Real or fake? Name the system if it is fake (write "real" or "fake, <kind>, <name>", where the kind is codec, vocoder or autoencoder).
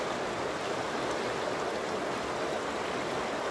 real